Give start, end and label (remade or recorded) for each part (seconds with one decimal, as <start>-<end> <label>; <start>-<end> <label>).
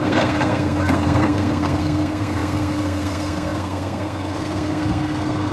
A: 0.0-5.5 remade